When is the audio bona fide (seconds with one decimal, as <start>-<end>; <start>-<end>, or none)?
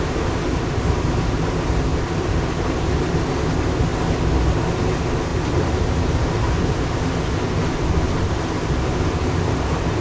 0.0-1.9; 3.5-5.3; 8.7-10.0